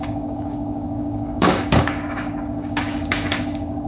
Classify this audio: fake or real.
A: fake